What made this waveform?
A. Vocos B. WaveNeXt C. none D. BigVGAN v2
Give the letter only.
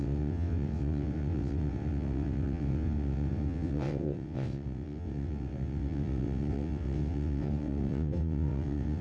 B